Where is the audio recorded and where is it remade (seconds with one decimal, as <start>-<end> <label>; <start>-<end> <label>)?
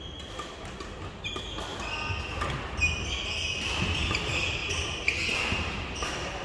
0.0-6.4 recorded